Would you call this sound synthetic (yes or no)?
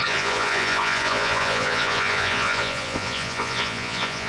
yes